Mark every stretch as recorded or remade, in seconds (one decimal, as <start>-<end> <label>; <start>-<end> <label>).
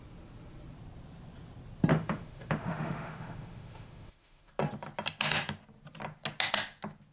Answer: 0.0-1.9 recorded; 1.9-4.5 remade; 4.5-7.1 recorded